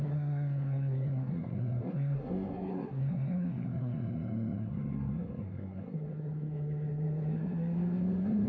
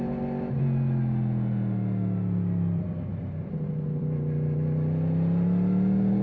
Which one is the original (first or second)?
second